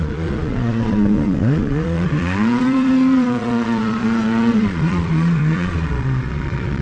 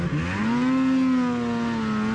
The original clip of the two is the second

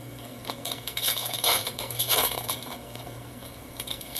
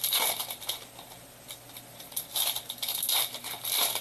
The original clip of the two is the second